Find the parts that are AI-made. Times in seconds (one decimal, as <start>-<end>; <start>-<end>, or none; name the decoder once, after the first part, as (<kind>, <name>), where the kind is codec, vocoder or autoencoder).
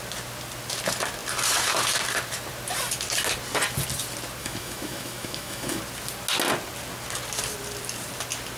4.4-5.8 (autoencoder, DAC-VAE)